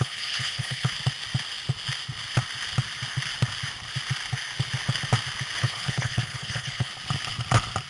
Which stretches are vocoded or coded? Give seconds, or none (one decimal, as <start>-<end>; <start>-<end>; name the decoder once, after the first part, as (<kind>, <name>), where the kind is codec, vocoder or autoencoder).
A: 0.0-0.9 (codec, HILCodec); 5.6-6.9